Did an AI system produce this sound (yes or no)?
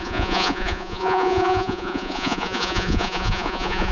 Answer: yes